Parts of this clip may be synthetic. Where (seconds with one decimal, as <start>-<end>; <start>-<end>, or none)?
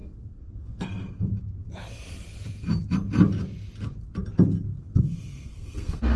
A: 0.0-1.3; 4.8-6.2